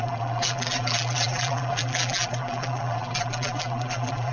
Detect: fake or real fake